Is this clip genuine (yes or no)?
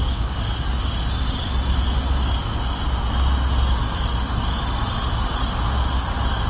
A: yes